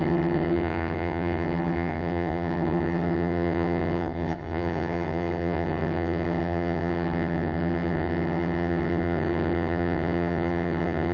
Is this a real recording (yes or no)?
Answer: no